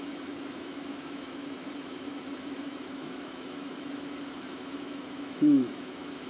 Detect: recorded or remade remade